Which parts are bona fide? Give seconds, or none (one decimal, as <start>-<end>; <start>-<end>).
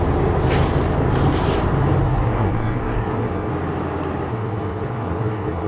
0.0-2.0; 3.5-4.3